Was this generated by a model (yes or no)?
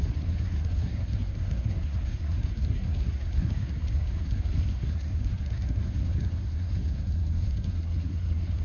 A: yes